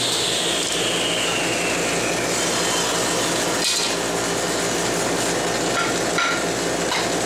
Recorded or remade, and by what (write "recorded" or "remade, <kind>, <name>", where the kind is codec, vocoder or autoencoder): recorded